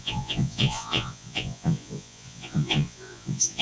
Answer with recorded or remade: remade